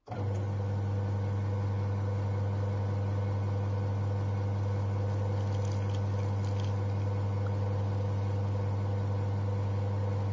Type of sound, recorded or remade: recorded